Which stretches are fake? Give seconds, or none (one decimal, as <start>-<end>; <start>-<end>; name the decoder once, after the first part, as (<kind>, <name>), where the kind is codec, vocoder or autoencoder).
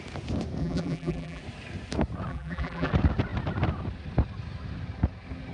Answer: 0.6-1.4 (vocoder, BigVGAN v2); 2.3-2.9